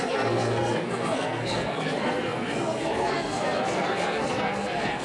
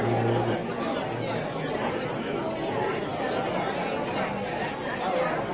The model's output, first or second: first